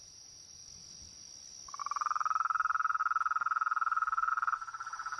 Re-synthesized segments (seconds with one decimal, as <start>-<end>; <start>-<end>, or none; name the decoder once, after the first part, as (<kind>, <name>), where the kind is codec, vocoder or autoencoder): 0.0-0.6 (vocoder, BigVGAN v2); 1.8-5.2